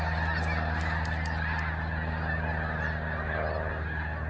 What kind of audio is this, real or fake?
real